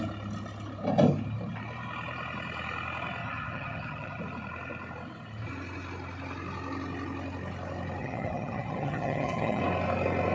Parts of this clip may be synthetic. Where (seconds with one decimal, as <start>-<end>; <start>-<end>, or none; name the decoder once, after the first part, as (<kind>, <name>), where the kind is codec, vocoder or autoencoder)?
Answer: 3.2-4.2 (vocoder, HiFi-GAN); 8.0-9.6